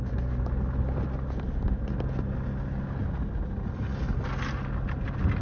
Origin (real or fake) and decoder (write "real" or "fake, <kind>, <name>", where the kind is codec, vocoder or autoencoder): real